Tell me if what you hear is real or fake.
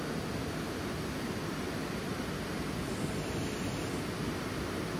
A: real